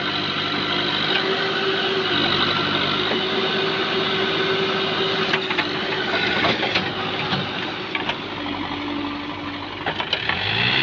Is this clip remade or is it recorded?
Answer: recorded